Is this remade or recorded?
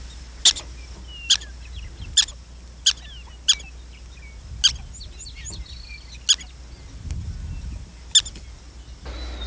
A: recorded